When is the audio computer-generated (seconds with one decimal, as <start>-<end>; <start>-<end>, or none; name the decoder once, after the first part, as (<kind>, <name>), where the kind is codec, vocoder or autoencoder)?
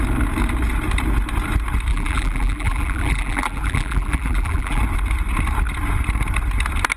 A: 1.9-4.8 (vocoder, BigVGAN v2)